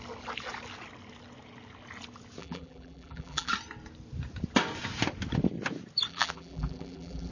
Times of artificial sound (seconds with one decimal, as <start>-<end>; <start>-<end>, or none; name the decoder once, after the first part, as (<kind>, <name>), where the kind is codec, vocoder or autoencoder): 2.4-3.5 (vocoder, BigVGAN v2); 6.1-7.3